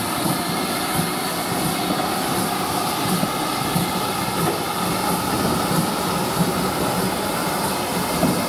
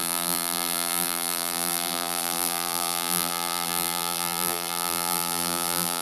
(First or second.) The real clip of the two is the first